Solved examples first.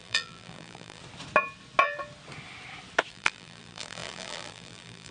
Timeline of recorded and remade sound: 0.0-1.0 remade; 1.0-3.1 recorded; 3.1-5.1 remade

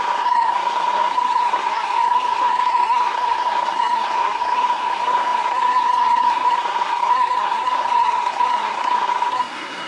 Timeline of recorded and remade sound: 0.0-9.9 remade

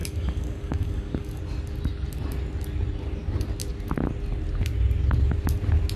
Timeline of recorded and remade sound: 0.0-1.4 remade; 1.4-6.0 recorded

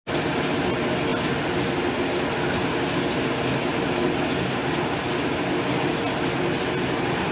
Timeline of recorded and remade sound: 0.0-7.3 recorded

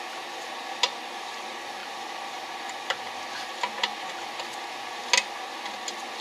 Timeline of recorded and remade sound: 0.0-6.2 recorded